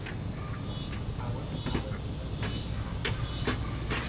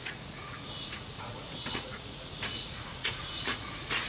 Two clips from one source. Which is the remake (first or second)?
second